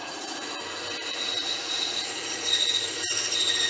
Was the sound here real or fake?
fake